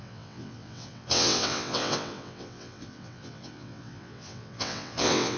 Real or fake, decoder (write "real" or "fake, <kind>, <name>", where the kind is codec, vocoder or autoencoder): fake, vocoder, WaveNeXt